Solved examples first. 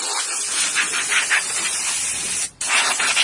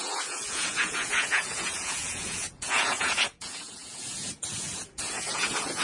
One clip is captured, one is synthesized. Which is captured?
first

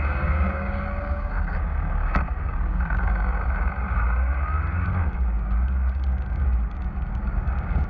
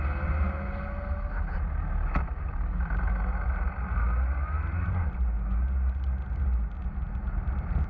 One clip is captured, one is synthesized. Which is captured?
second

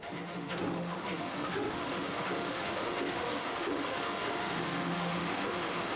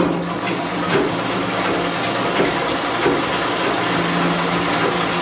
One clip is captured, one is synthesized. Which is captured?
second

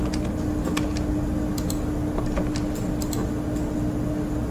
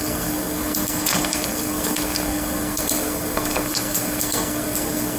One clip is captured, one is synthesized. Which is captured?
first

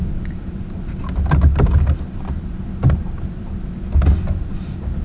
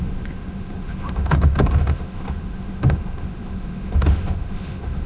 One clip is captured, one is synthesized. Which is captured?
first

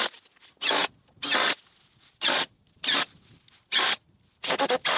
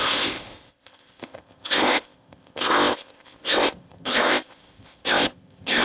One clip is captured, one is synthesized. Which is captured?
first